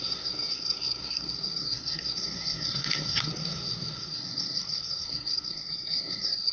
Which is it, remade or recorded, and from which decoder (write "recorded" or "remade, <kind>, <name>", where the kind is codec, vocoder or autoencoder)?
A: remade, codec, SNAC